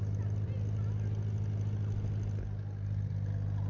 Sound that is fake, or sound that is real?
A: real